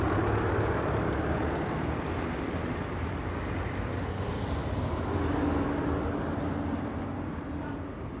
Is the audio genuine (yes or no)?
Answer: yes